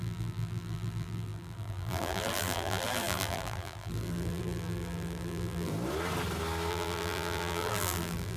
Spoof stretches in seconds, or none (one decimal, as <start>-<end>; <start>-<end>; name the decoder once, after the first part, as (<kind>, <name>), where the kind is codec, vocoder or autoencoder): 0.0-5.7 (vocoder, BigVGAN v2); 6.7-8.4